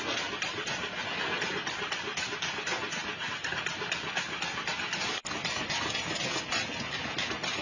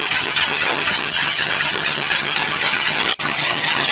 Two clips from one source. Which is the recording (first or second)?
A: first